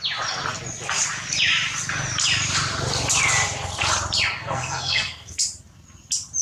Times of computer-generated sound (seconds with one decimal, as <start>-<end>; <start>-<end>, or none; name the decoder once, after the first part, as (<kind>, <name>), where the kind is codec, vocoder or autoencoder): 4.4-5.4 (codec, SNAC)